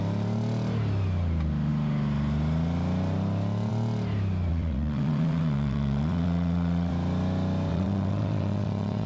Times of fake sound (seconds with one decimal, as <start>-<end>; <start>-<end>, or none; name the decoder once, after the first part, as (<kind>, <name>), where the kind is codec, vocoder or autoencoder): 4.5-6.9 (vocoder, WaveNeXt); 7.7-9.1